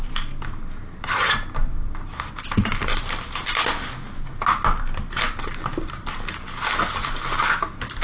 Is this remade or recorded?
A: recorded